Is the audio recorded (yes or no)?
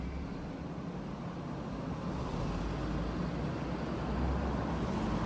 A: yes